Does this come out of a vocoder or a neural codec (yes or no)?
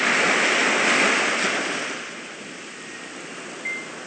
no